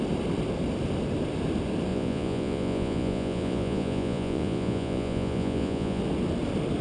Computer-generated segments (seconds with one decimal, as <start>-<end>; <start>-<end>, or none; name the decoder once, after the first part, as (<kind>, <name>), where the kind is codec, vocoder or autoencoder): 1.9-6.0 (vocoder, Vocos)